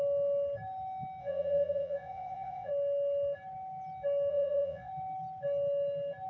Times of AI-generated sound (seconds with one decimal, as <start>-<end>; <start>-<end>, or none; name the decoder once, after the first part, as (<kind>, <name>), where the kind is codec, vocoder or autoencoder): 1.2-2.7 (vocoder, Vocos); 4.3-4.9